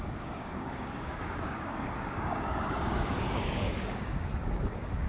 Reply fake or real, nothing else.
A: fake